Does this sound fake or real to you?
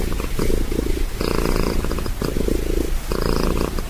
real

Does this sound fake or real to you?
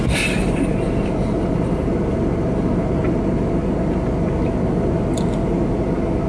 real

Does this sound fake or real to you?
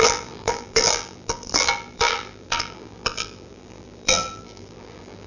fake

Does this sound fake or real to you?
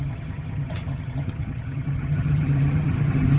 fake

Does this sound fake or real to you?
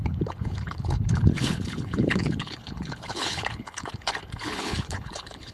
fake